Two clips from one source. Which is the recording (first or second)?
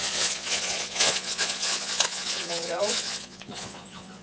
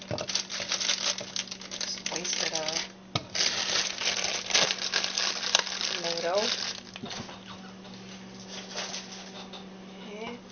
second